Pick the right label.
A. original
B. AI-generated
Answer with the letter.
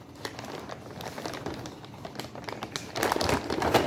A